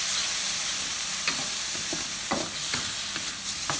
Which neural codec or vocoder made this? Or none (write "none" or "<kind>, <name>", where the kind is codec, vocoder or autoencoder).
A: none